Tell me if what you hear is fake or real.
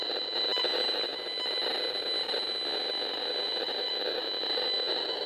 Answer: real